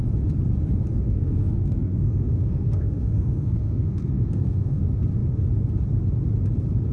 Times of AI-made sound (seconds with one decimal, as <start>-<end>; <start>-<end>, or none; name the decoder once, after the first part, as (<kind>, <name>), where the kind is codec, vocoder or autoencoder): 1.0-4.8 (codec, SNAC)